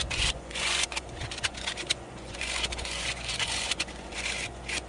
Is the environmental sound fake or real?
fake